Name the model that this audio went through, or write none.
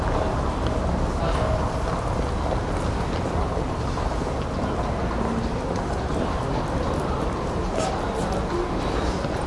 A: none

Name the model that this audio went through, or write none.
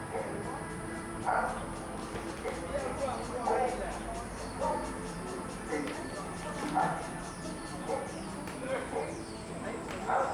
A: vocoder, BigVGAN v2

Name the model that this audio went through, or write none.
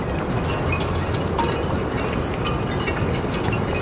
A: none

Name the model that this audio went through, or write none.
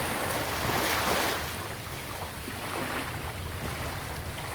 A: none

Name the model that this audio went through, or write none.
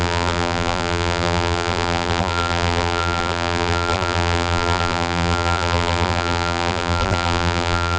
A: vocoder, BigVGAN v2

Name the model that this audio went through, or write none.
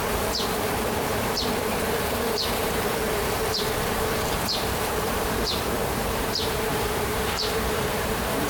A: vocoder, BigVGAN v2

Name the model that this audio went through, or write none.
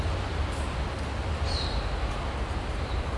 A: none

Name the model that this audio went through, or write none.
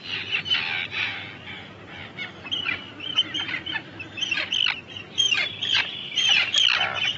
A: none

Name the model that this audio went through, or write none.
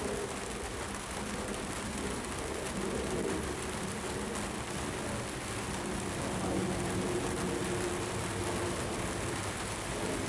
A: none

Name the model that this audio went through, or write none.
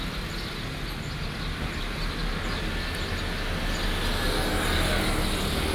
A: none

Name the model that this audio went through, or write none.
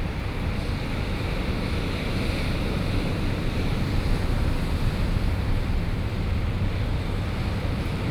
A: none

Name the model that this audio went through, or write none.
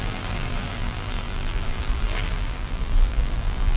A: vocoder, BigVGAN v2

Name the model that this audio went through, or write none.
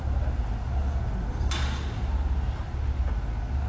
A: none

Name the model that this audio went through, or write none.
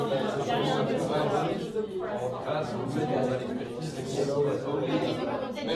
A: vocoder, BigVGAN v2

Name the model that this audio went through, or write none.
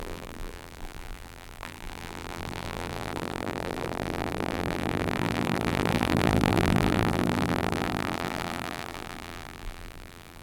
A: vocoder, BigVGAN v2